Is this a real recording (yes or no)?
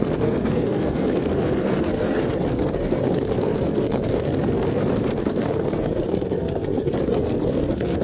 no